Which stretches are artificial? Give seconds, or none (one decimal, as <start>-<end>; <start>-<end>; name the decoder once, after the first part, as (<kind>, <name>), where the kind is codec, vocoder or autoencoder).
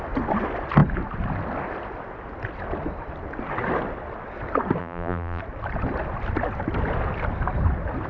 4.8-5.4 (vocoder, BigVGAN v2)